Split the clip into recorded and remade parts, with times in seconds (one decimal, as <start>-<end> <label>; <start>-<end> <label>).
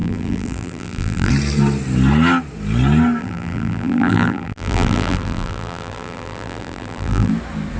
0.0-1.3 remade; 1.3-3.2 recorded; 3.2-7.3 remade; 7.3-7.8 recorded